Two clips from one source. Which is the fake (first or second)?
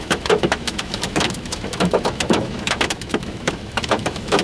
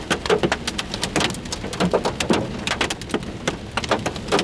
first